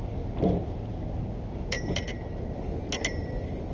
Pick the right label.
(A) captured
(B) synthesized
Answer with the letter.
A